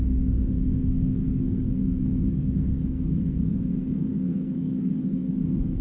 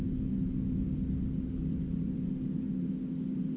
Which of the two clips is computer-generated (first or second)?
first